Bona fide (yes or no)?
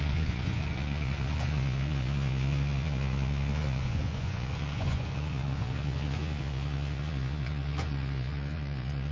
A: no